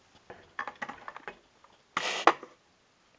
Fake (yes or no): no